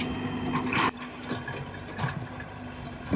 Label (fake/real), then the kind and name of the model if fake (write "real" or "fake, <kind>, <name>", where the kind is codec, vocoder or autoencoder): real